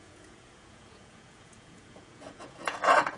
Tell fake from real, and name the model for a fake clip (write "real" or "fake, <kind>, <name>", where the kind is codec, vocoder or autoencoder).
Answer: fake, vocoder, Vocos